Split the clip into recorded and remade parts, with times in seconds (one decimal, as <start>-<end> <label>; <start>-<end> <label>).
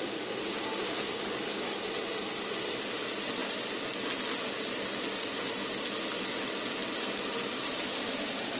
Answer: 0.0-8.6 recorded